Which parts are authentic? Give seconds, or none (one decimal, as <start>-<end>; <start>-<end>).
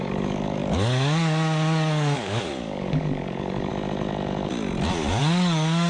3.7-5.2